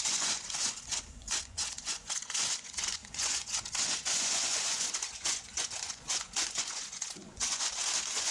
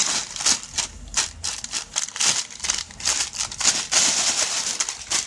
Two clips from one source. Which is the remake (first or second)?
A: first